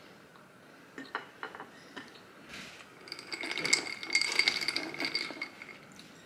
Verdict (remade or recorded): recorded